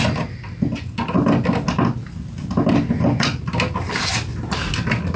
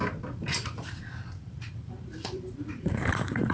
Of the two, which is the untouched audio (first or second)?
first